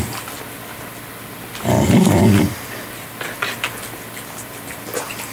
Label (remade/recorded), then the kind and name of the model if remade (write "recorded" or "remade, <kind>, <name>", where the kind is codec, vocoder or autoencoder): recorded